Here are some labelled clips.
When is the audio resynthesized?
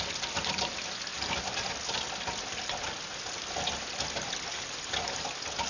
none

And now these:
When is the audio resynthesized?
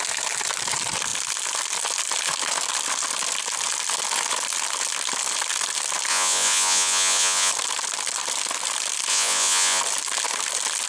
6.1-7.5 (vocoder, Vocos); 9.1-9.8